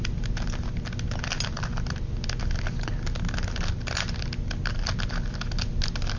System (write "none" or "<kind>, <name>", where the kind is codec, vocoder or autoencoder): none